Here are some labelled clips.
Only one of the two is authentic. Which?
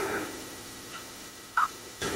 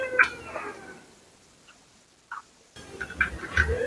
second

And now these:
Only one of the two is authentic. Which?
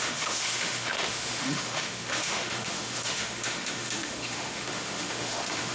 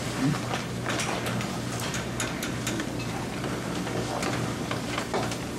second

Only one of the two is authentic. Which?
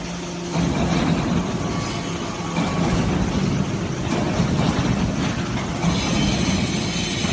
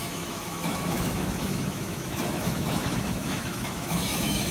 first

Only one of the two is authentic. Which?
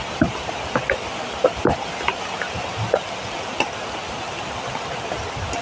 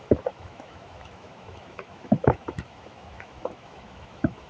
first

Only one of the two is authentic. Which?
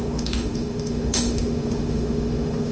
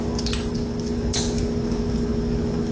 second